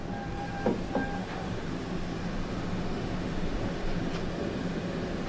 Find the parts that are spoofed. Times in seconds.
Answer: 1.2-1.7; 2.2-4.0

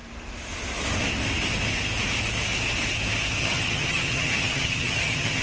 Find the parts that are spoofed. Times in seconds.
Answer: 3.4-5.4

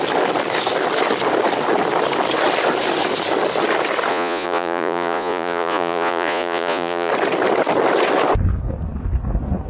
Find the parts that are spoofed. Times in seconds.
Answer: 4.1-7.1

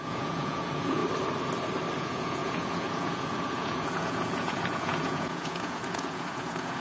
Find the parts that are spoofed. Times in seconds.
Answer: 0.0-1.0; 2.0-6.8

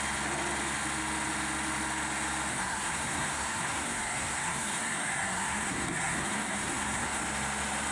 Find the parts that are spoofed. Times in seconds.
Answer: 2.5-7.2

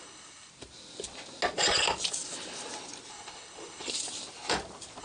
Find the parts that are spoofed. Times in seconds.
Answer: 0.0-0.5; 3.1-3.9

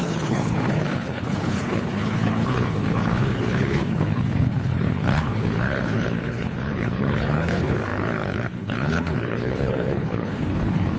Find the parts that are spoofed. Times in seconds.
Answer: 0.0-11.0

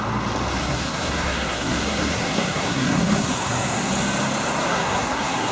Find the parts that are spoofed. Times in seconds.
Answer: 0.6-3.9; 4.7-5.5